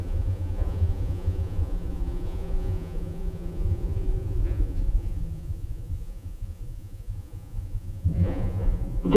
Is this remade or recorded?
remade